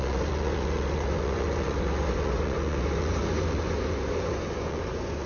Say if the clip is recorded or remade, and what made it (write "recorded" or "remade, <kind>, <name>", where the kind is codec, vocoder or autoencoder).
remade, vocoder, Vocos